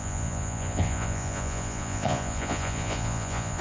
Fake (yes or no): yes